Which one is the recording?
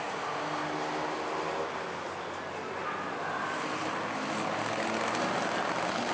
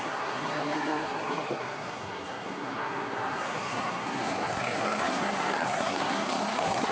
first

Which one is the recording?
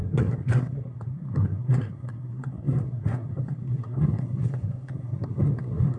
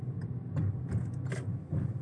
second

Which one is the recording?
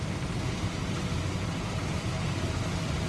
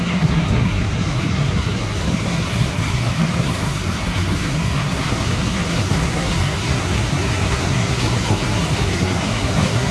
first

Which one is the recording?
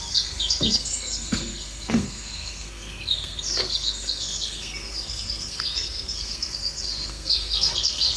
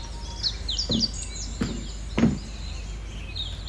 second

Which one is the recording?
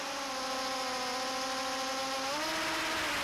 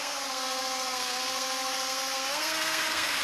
first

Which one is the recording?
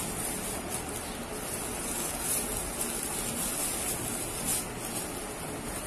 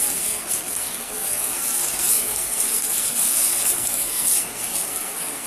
first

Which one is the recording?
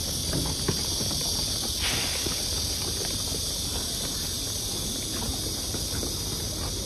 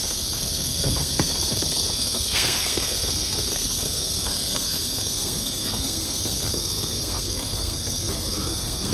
first